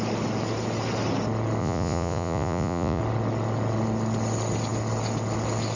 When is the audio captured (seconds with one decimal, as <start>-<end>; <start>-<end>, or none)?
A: 0.0-1.6; 3.0-5.8